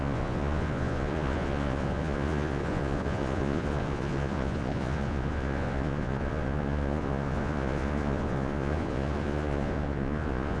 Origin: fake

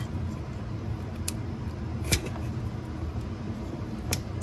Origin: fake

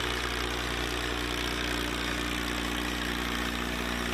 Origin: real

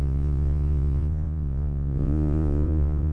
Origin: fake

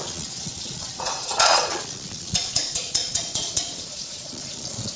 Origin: fake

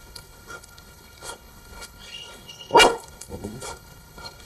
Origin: fake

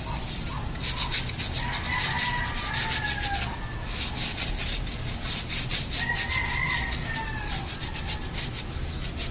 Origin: real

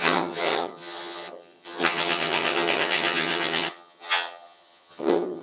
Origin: fake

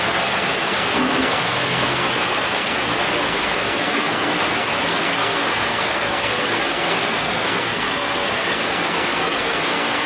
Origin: fake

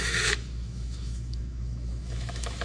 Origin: fake